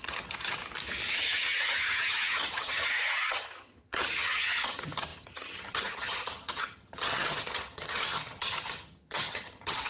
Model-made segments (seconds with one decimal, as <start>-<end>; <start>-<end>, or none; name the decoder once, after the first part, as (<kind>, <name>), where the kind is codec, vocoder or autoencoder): 0.0-0.6 (vocoder, HiFi-GAN); 1.1-9.9